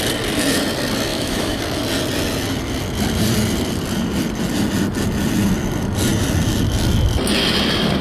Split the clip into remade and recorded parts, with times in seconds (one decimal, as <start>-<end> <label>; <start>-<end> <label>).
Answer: 0.0-1.1 recorded; 1.1-1.6 remade; 1.6-8.0 recorded

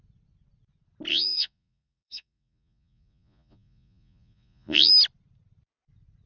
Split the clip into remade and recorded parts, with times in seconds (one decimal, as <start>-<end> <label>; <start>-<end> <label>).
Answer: 0.0-1.1 recorded; 1.1-4.9 remade; 4.9-6.3 recorded

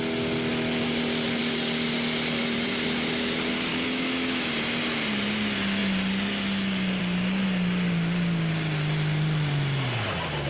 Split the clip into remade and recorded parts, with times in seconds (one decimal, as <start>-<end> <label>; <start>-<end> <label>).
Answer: 0.0-3.7 recorded; 3.7-4.5 remade; 4.5-10.5 recorded

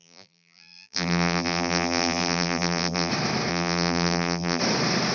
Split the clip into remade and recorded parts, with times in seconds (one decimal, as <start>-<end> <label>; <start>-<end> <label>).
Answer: 0.0-3.1 remade; 3.1-3.5 recorded; 3.5-4.6 remade; 4.6-5.1 recorded

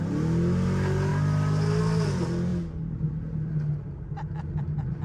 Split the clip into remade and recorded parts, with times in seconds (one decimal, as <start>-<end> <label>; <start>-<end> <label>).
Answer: 0.0-5.0 recorded

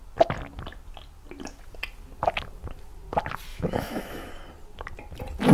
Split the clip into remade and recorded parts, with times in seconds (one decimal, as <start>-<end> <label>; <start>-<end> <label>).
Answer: 0.0-3.5 recorded; 3.5-4.3 remade; 4.3-5.5 recorded

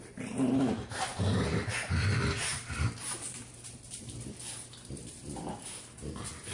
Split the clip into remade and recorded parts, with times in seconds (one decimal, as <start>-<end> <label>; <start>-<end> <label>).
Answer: 0.0-6.5 recorded